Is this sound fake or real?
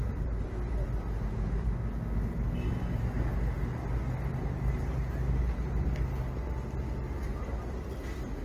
real